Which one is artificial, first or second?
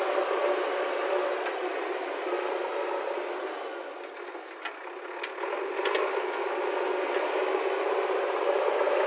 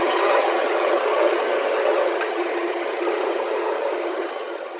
second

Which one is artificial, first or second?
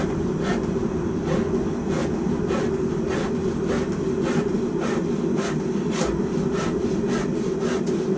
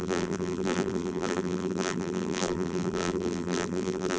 second